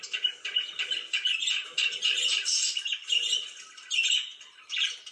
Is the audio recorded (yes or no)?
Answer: yes